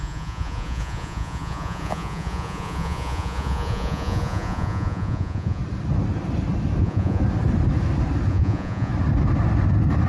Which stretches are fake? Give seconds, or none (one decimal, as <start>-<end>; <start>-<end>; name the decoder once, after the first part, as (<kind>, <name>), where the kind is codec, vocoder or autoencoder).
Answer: 0.0-5.6 (vocoder, Vocos); 6.8-7.2; 8.3-8.9